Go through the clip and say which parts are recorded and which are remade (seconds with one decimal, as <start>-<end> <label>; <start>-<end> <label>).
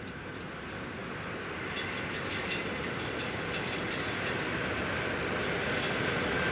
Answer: 0.0-6.5 recorded